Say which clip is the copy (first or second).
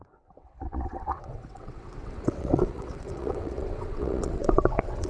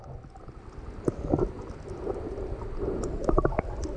first